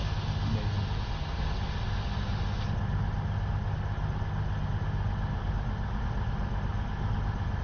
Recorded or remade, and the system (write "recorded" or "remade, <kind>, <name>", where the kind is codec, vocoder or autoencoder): recorded